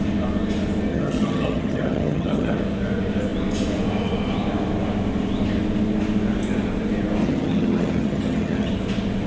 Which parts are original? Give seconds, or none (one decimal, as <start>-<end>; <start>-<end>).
0.0-0.9; 2.6-7.2; 8.7-9.3